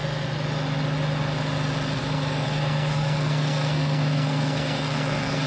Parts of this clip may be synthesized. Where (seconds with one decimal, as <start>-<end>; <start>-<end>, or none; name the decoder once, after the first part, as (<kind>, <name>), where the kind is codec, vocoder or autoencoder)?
2.0-5.5 (codec, SNAC)